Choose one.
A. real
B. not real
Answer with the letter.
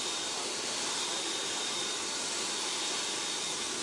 A